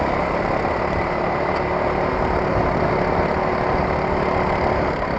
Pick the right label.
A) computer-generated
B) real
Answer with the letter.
B